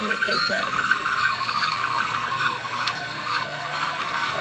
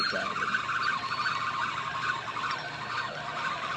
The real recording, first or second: second